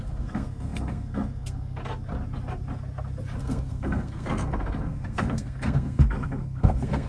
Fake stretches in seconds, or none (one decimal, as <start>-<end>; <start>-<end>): 0.0-1.8; 3.4-7.1